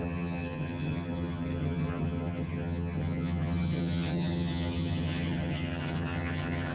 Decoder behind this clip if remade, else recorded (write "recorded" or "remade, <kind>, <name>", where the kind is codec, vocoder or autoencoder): remade, vocoder, HiFi-GAN